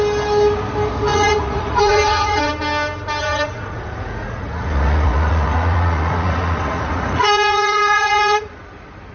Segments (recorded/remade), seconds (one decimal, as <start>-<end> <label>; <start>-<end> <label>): 0.0-1.1 recorded; 1.1-2.5 remade; 2.5-3.2 recorded; 3.2-8.5 remade; 8.5-9.1 recorded